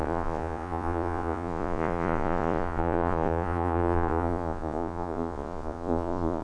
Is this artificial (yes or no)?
yes